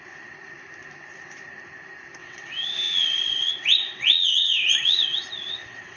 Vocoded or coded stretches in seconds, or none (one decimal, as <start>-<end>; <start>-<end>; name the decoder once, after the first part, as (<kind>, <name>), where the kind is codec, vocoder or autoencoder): 2.2-6.0 (vocoder, WaveNeXt)